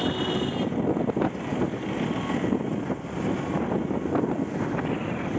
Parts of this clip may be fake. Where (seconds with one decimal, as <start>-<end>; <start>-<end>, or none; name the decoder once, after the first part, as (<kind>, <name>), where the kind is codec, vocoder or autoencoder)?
none